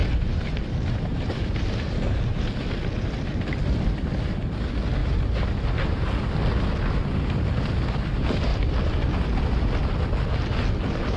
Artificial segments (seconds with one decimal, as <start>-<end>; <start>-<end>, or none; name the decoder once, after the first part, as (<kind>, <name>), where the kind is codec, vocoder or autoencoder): 0.0-2.4 (vocoder, BigVGAN v2); 5.0-6.1